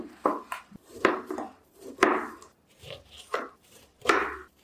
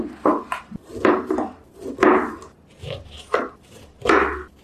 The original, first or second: second